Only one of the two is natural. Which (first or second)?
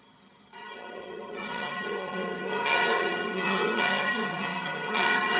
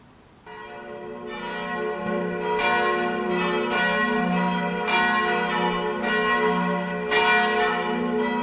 second